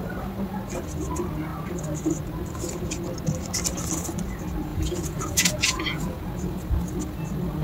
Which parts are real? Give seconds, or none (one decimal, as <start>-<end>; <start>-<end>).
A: 0.0-4.7; 6.2-7.6